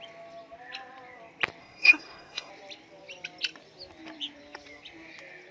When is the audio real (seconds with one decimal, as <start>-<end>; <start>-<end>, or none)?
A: 0.0-1.6; 2.5-5.5